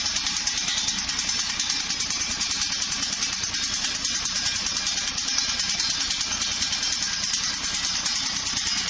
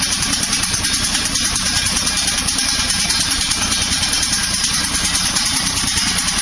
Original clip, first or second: first